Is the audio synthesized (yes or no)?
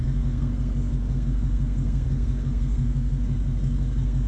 yes